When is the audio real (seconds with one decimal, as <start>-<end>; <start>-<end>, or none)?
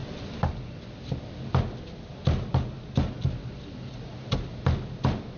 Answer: 0.0-5.4